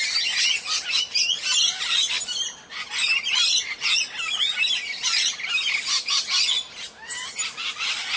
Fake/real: real